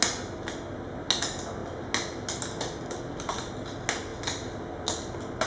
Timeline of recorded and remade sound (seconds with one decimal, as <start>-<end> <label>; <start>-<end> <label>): 0.0-5.5 recorded